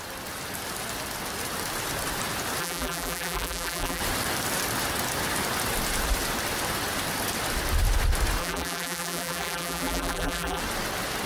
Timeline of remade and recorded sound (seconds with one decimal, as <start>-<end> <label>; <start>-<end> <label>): 0.0-2.6 recorded; 2.6-4.0 remade; 4.0-8.4 recorded; 8.4-10.6 remade; 10.6-11.3 recorded